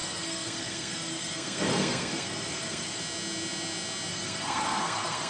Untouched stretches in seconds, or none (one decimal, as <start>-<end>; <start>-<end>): 3.0-4.1